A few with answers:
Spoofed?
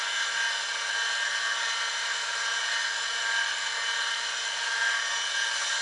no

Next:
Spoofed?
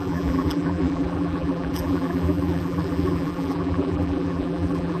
yes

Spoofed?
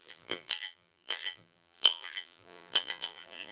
yes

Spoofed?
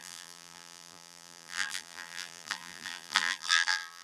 yes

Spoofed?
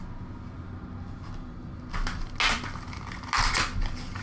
no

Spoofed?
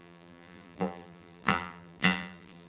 yes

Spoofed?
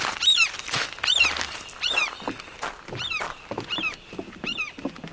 yes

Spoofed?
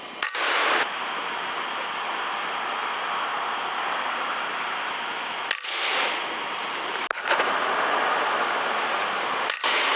no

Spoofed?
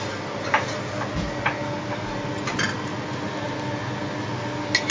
no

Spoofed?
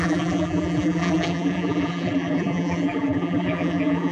yes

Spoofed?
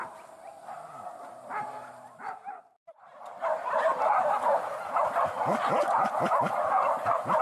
no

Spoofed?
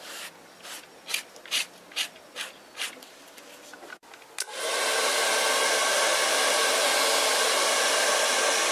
no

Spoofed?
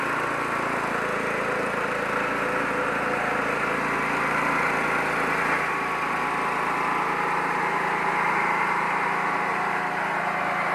no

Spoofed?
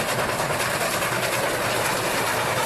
no